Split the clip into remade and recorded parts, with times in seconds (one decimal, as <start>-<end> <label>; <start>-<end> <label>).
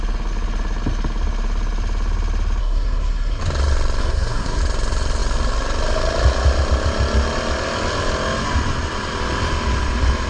0.0-2.6 recorded; 2.6-3.4 remade; 3.4-4.0 recorded; 4.0-4.6 remade; 4.6-10.3 recorded